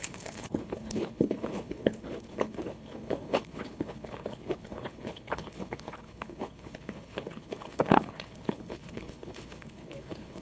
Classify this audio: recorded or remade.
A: remade